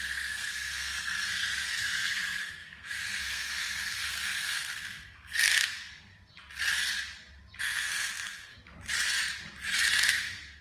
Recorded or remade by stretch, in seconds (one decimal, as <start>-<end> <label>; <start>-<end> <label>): 0.0-6.1 remade; 6.1-7.6 recorded; 7.6-8.5 remade; 8.5-10.0 recorded; 10.0-10.6 remade